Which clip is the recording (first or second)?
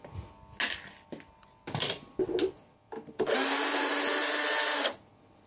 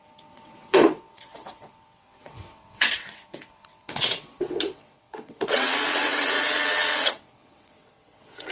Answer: first